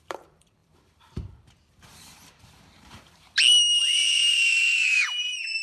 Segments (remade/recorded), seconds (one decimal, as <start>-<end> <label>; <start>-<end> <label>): 0.0-5.6 remade